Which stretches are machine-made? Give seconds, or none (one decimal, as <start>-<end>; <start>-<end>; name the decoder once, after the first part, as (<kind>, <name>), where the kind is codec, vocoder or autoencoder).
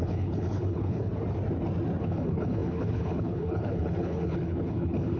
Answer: 0.0-1.1 (codec, HILCodec); 2.0-5.2